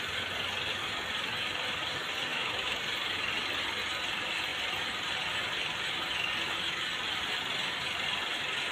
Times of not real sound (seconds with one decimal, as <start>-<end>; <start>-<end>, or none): 2.3-2.8